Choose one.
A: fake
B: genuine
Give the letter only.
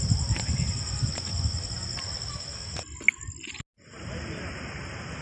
B